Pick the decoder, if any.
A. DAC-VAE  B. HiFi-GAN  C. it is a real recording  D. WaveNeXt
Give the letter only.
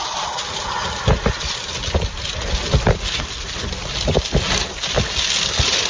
C